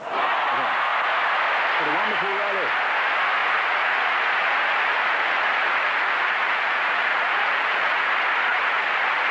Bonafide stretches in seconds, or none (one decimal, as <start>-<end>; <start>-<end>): 0.0-3.4; 8.1-8.5

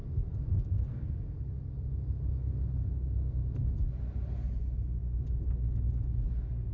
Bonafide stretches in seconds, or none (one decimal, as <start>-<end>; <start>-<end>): 1.4-2.3; 3.4-6.7

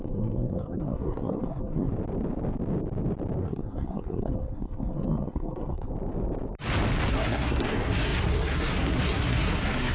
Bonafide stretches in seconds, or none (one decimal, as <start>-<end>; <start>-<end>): 1.9-3.4; 5.9-7.1

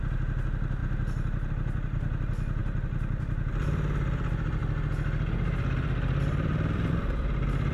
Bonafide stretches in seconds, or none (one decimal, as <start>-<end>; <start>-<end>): 0.8-1.5; 4.6-5.3